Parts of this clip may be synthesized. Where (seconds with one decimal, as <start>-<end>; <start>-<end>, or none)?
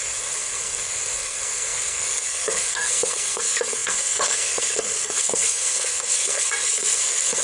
0.0-7.4